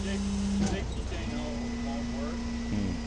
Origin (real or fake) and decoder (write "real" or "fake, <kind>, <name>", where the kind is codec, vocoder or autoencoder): real